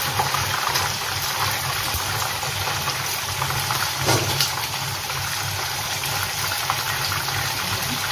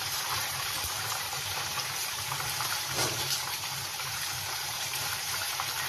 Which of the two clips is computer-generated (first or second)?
second